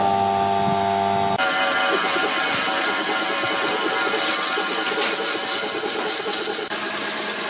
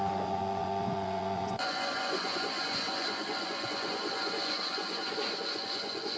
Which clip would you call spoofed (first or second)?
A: second